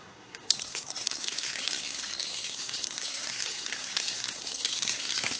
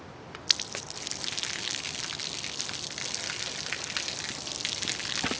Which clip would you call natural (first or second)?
second